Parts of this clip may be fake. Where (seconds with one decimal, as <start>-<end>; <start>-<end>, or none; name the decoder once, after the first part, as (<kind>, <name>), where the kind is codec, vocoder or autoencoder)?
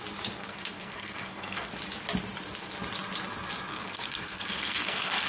0.4-1.7 (codec, SNAC); 3.7-5.3